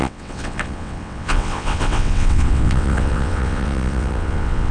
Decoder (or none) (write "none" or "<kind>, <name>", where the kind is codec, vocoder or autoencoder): vocoder, WaveNeXt